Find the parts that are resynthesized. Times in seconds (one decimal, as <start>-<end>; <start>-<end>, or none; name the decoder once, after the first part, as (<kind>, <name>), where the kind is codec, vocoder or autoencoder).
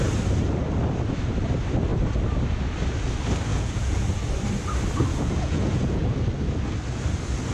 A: 3.5-4.2 (vocoder, Vocos); 5.1-6.1